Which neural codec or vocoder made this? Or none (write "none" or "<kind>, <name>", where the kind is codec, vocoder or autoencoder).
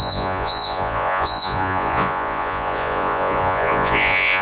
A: vocoder, Vocos